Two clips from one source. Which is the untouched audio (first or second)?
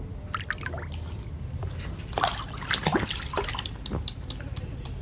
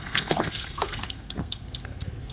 first